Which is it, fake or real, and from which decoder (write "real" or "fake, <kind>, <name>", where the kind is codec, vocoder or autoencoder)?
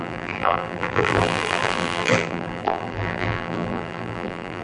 fake, vocoder, BigVGAN v2